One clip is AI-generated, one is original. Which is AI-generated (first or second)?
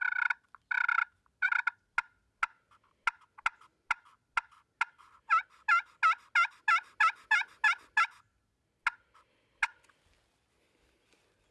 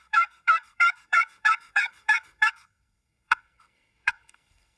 second